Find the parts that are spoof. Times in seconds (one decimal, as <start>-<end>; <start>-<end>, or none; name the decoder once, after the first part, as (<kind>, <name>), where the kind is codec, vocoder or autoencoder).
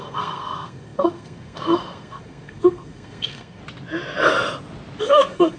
0.0-3.6 (codec, SNAC); 5.0-5.6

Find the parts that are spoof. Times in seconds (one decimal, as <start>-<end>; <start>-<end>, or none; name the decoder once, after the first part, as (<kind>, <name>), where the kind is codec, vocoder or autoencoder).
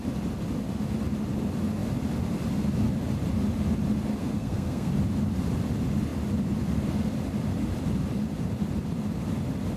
4.2-4.9 (codec, SNAC)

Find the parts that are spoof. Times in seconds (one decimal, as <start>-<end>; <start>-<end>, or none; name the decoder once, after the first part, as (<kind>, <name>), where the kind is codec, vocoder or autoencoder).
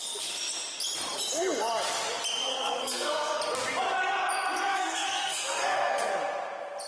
2.5-3.4 (codec, SNAC); 4.7-6.1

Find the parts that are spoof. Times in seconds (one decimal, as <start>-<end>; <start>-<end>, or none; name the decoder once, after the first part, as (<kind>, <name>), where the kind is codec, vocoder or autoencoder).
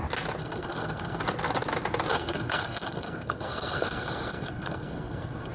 0.4-1.2 (codec, SNAC); 2.1-5.5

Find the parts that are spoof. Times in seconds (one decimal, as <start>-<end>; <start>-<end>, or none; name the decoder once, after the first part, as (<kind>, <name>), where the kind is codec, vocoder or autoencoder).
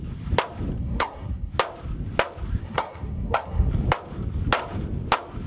0.8-1.5 (codec, SNAC); 2.6-3.7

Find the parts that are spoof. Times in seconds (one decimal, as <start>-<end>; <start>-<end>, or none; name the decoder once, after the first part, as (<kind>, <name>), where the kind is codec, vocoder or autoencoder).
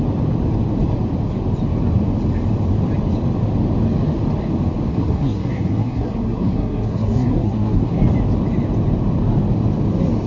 4.9-8.0 (codec, SNAC)